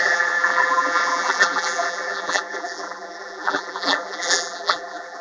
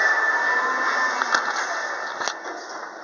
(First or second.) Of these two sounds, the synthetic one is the first